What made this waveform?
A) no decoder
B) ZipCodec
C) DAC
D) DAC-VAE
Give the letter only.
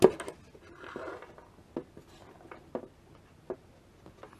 A